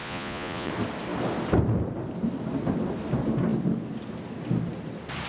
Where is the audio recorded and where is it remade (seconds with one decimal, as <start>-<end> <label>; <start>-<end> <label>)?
0.0-0.7 remade; 0.7-5.3 recorded